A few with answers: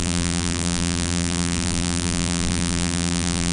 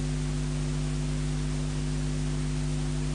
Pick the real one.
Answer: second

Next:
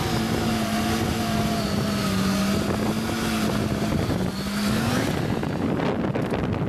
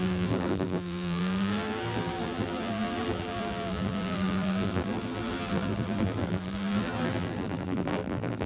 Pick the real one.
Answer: first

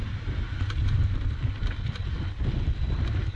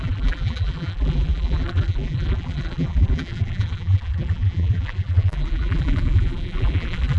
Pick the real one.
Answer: first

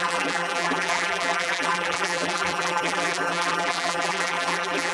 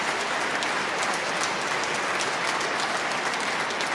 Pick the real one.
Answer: second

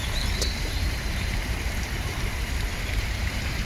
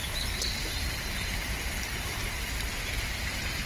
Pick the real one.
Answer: second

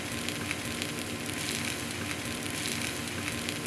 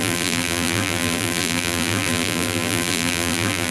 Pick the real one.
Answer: first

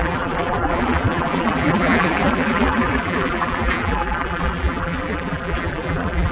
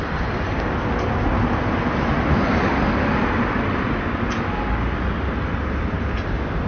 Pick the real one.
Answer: second